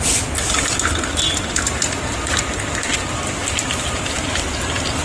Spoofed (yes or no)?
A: yes